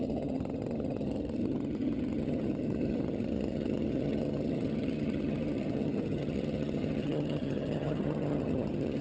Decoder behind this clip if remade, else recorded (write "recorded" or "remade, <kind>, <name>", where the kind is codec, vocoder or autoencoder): remade, vocoder, HiFi-GAN